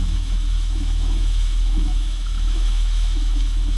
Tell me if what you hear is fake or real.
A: fake